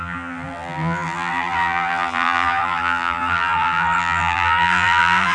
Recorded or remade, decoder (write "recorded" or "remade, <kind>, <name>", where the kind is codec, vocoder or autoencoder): remade, vocoder, BigVGAN v2